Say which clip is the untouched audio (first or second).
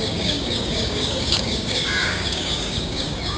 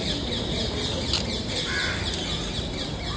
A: second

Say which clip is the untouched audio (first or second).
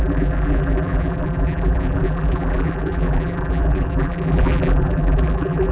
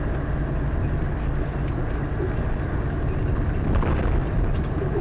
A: second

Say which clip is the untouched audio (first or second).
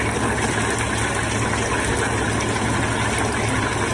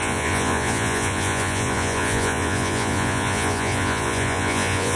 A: first